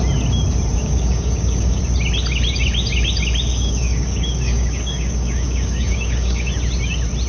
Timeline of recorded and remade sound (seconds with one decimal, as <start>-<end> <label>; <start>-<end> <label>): 0.0-0.7 recorded; 0.7-1.8 remade; 1.8-3.5 recorded; 3.5-6.5 remade; 6.5-7.3 recorded